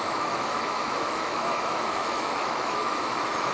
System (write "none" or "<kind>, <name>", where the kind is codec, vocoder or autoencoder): autoencoder, DAC-VAE